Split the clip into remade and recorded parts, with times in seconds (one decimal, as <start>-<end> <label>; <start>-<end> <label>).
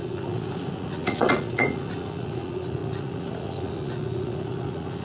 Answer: 0.0-5.0 remade